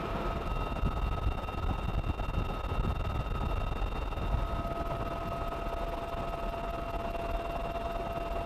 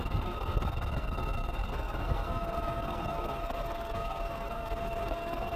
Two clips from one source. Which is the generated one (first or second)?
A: second